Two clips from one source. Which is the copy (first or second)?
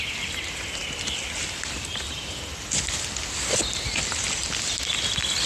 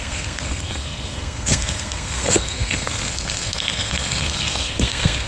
second